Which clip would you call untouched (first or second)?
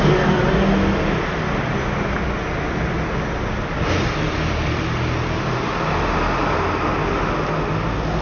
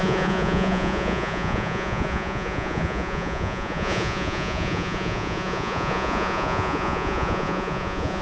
first